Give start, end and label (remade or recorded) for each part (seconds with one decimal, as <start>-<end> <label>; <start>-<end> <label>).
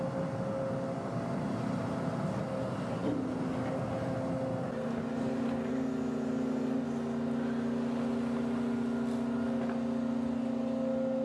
0.0-11.2 recorded